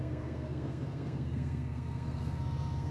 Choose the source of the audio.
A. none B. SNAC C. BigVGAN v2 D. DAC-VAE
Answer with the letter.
B